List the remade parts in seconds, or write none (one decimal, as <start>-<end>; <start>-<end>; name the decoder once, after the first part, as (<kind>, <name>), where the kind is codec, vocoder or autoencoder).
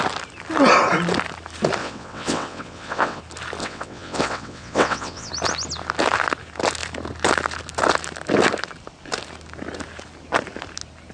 1.8-3.2 (vocoder, WaveNeXt); 3.6-5.3